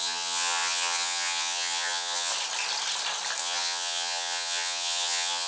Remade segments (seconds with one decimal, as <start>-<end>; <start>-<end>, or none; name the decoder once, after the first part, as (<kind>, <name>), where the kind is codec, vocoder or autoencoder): 0.0-2.3 (vocoder, HiFi-GAN); 3.4-5.5